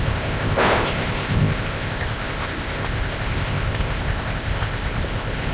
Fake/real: fake